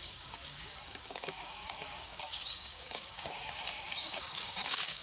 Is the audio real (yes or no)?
no